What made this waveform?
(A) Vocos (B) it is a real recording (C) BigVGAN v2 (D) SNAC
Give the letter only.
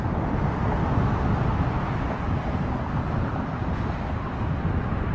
B